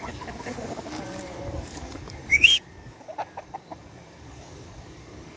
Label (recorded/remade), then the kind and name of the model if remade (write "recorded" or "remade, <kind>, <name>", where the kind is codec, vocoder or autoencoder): remade, codec, DAC